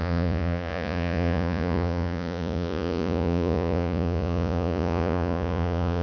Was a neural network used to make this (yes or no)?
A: yes